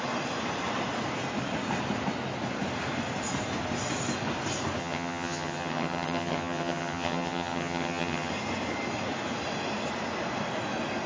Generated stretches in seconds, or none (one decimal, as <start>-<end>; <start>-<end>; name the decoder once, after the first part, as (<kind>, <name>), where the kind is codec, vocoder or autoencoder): 4.8-8.3 (vocoder, HiFi-GAN)